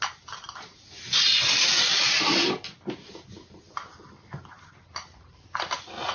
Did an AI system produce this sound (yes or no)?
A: no